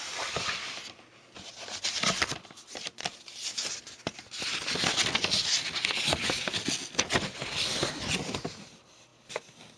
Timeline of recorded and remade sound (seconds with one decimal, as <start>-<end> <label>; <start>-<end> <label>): 0.0-9.8 recorded